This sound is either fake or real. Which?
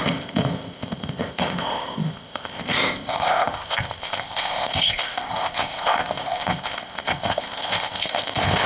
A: fake